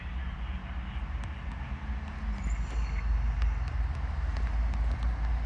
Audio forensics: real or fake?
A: real